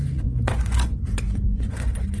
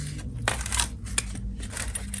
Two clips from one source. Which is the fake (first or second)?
first